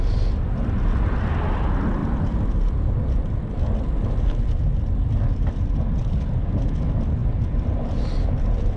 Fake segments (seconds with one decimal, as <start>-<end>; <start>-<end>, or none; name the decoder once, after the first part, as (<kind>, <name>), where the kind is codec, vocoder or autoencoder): 0.6-1.6 (vocoder, BigVGAN v2); 2.0-5.8; 7.2-8.8